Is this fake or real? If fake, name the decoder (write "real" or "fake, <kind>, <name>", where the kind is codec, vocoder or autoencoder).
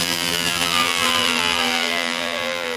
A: fake, vocoder, BigVGAN v2